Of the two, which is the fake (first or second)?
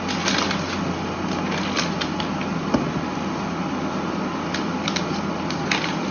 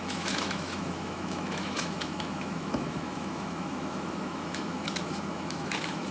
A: second